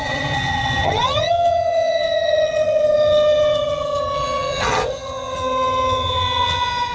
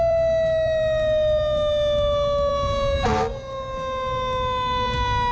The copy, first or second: first